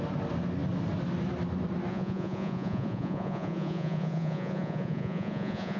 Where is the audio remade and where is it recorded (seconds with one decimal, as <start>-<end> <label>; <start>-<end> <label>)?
0.0-1.9 recorded; 1.9-5.8 remade